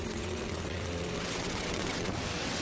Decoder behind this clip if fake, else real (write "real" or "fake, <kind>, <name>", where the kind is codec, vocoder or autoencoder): fake, vocoder, WaveNeXt